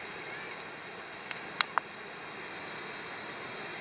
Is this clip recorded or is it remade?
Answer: recorded